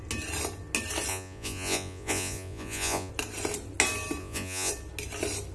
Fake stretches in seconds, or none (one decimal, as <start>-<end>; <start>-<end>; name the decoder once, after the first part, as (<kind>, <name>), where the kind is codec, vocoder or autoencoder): 1.1-3.1 (vocoder, Vocos); 4.2-4.7